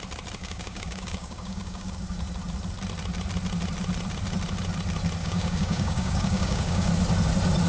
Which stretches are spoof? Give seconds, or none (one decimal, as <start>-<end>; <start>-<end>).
0.4-1.9; 5.2-6.9